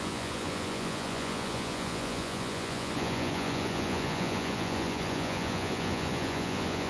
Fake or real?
fake